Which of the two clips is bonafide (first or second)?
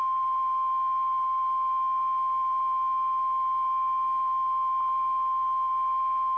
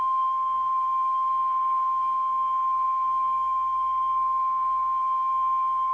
first